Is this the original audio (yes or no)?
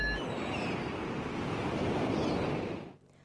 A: yes